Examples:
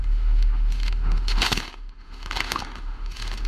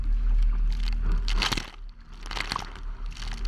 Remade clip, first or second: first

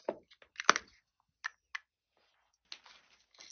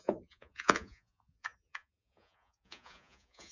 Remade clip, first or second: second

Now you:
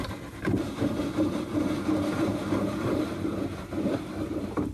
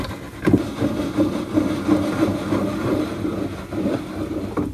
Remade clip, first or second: first